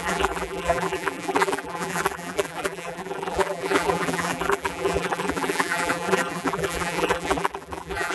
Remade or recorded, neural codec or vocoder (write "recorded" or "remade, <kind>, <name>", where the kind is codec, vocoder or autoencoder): remade, vocoder, BigVGAN v2